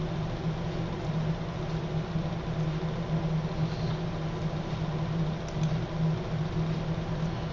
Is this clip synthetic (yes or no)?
no